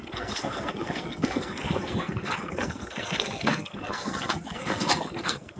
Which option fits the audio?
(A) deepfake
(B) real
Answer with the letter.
A